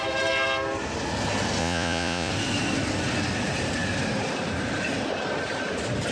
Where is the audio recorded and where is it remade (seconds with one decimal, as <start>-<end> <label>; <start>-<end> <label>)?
0.0-1.6 recorded; 1.6-2.3 remade; 2.3-6.1 recorded

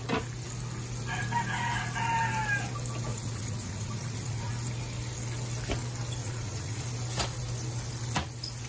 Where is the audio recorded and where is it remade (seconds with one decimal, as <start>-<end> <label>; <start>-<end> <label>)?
0.0-3.1 recorded; 3.1-4.5 remade; 4.5-6.2 recorded; 6.2-6.8 remade; 6.8-8.7 recorded

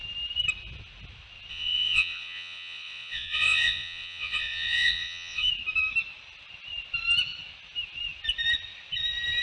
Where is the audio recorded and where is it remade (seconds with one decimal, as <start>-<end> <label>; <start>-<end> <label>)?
0.0-1.5 recorded; 1.5-5.5 remade; 5.5-9.4 recorded